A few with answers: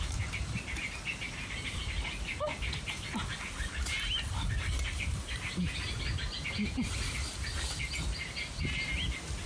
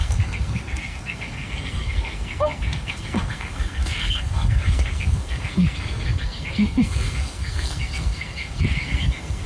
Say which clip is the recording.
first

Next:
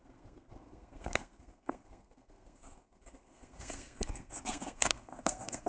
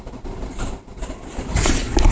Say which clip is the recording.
second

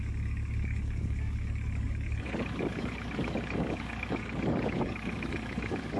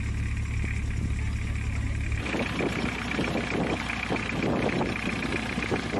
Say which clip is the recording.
second